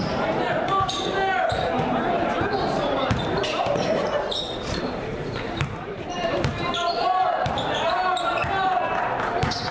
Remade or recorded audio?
remade